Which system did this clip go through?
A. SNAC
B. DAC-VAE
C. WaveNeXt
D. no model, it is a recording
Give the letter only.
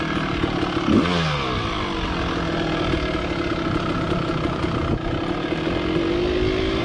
D